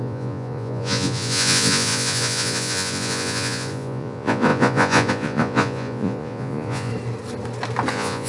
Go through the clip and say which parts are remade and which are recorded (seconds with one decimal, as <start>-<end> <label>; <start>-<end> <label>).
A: 0.0-6.9 remade; 6.9-7.9 recorded; 7.9-8.3 remade